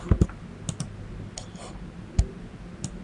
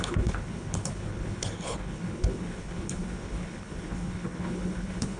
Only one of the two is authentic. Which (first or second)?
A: first